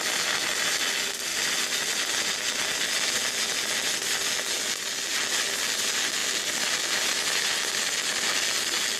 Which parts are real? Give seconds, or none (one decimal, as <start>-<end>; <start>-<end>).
0.0-9.0